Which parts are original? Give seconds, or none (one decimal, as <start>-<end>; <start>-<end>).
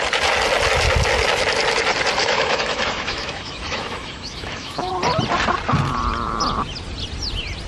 0.0-2.2; 4.9-7.7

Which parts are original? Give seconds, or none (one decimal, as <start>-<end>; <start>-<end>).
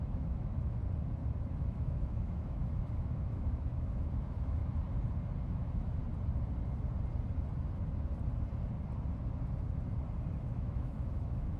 0.8-1.4; 4.6-5.4; 6.0-10.3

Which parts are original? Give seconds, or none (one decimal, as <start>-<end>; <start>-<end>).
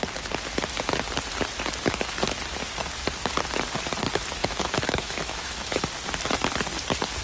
0.0-4.4; 5.8-7.2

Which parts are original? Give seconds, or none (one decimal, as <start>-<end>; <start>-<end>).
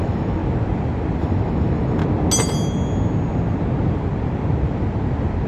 0.4-1.2; 2.0-5.5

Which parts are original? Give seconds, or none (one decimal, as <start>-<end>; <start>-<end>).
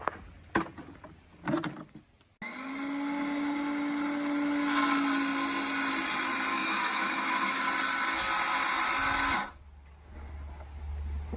0.0-6.5; 7.6-11.4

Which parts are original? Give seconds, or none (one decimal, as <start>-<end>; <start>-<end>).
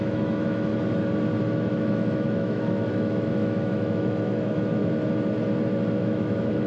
0.7-1.7; 4.8-6.0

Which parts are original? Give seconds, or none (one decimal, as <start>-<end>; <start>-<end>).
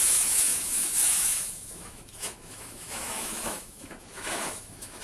none